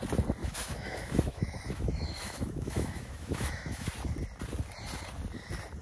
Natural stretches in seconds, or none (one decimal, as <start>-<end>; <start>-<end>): 0.0-0.4; 3.9-5.8